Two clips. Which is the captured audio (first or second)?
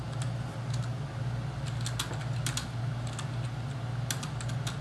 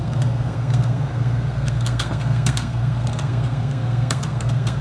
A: first